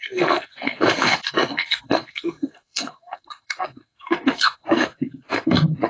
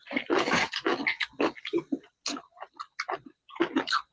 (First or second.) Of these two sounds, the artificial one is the first